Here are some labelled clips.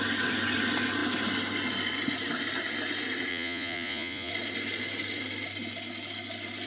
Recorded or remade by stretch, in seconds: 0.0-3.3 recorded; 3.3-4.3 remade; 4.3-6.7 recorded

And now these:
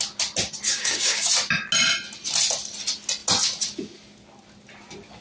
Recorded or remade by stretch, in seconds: 0.0-0.7 recorded; 0.7-1.3 remade; 1.3-5.2 recorded

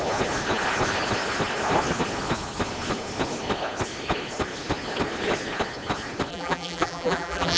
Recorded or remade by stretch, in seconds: 0.0-6.3 recorded; 6.3-7.6 remade

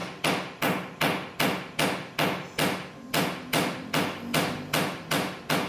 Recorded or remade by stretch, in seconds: 0.0-5.7 recorded

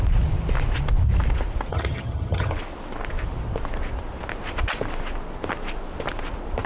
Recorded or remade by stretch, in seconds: 0.0-1.7 recorded; 1.7-2.5 remade; 2.5-6.7 recorded

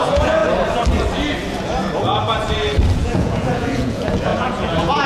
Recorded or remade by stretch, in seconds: 0.0-0.4 remade; 0.4-3.0 recorded; 3.0-5.1 remade